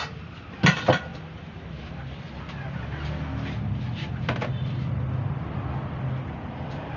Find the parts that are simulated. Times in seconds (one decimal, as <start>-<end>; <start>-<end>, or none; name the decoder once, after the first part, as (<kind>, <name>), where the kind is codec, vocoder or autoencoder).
none